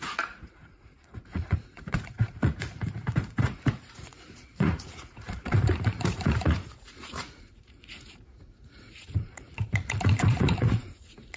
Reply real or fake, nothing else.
fake